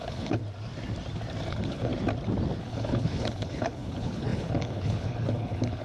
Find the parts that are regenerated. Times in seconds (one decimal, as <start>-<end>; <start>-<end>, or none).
0.0-0.4; 1.5-1.9; 2.6-5.8